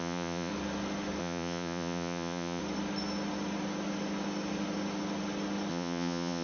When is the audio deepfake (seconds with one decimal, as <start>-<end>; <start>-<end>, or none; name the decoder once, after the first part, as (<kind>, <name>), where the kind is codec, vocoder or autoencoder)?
0.0-0.5 (vocoder, Vocos); 1.2-2.6; 5.7-6.4